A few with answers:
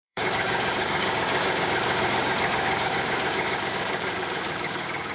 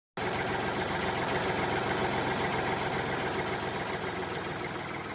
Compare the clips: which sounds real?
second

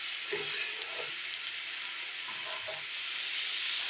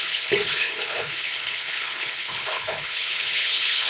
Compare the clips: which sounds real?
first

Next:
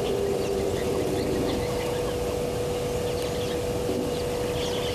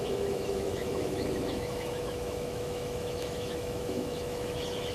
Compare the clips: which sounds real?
first